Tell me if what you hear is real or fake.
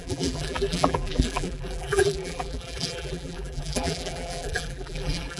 fake